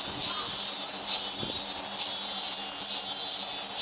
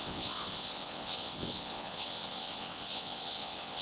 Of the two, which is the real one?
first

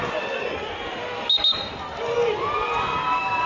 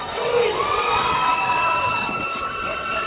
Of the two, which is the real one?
first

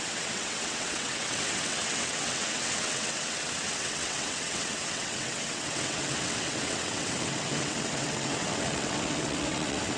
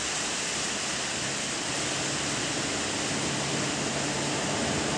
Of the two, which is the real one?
second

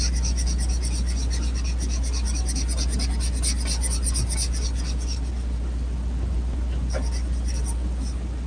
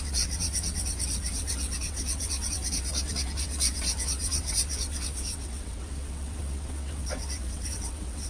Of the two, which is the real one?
first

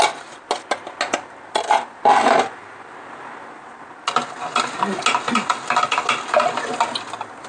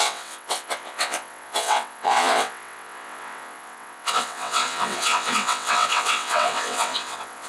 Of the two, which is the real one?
first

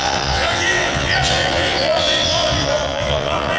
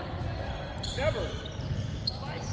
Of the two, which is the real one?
second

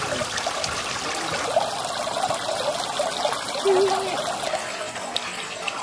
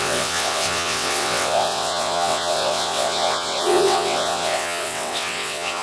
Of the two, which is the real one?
first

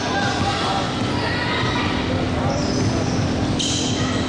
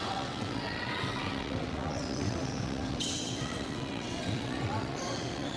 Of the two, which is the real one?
first